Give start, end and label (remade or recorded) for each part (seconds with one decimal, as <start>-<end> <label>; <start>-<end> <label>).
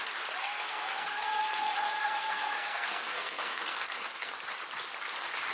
0.0-0.4 recorded; 0.4-1.4 remade; 1.4-2.0 recorded; 2.0-4.3 remade; 4.3-5.5 recorded